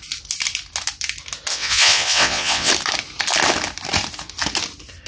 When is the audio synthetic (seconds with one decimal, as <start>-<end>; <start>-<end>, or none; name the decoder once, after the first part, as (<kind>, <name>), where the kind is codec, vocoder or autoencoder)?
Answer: 1.5-2.7 (vocoder, WaveNeXt)